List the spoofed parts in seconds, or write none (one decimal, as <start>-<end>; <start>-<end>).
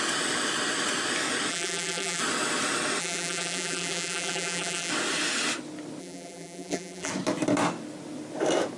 1.5-2.2; 3.0-4.9; 6.0-7.1